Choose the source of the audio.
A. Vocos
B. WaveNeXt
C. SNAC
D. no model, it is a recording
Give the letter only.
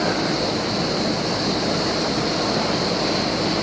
D